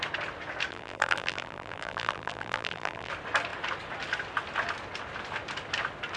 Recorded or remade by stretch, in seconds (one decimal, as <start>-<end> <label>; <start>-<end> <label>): 0.0-0.7 recorded; 0.7-3.1 remade; 3.1-6.2 recorded